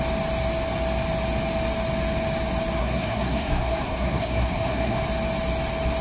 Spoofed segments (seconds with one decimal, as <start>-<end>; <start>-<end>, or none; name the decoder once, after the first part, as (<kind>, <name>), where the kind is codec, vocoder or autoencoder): 2.8-5.0 (codec, SNAC)

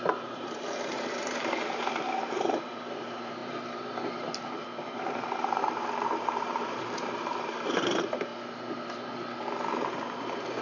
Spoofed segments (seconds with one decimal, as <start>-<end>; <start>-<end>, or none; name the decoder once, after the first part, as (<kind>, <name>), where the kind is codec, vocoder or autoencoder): 0.0-5.6 (vocoder, BigVGAN v2); 6.4-8.3; 10.2-10.6

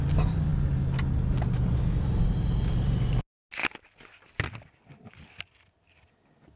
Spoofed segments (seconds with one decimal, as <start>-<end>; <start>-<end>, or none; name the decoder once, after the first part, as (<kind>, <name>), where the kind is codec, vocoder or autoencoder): none

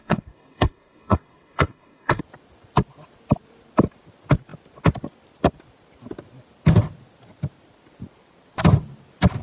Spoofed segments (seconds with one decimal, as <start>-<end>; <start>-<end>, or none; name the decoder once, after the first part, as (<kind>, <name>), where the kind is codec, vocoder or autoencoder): 0.0-2.2 (codec, SNAC)

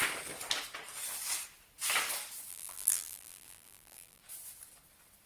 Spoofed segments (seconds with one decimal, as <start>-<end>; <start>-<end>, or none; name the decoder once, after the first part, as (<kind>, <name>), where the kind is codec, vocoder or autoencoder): 2.5-4.2 (vocoder, BigVGAN v2)

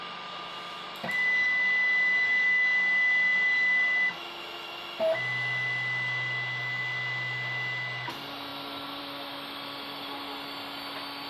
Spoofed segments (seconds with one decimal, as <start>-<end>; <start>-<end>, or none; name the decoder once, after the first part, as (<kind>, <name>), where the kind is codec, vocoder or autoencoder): none

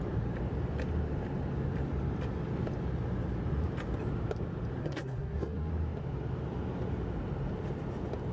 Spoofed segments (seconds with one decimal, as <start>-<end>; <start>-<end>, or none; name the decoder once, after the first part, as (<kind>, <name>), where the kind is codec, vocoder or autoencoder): 4.8-5.7 (codec, SNAC)

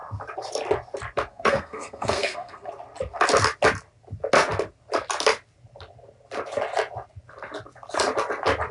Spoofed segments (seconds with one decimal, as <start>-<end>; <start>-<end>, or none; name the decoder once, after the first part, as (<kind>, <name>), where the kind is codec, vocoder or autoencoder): 1.3-2.7 (codec, SNAC)